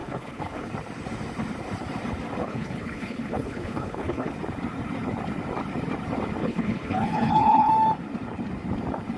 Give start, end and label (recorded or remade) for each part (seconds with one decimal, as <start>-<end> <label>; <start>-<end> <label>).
0.0-0.7 remade; 0.7-2.4 recorded; 2.4-4.3 remade; 4.3-6.4 recorded; 6.4-7.7 remade; 7.7-9.2 recorded